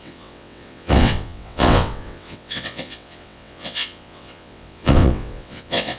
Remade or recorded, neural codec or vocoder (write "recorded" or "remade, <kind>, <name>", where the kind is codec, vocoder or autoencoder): remade, vocoder, WaveNeXt